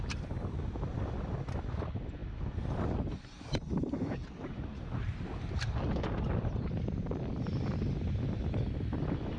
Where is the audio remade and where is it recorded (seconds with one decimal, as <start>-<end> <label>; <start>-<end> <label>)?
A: 0.0-9.4 recorded